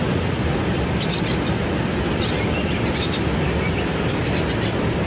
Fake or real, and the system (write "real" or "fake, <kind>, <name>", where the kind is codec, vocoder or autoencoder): real